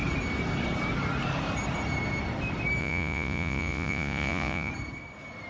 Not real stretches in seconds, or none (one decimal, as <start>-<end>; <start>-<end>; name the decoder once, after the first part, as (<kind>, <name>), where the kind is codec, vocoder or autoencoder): 2.8-4.7 (vocoder, Vocos)